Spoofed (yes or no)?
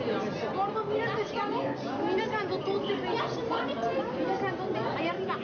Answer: no